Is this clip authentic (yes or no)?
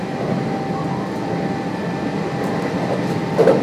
yes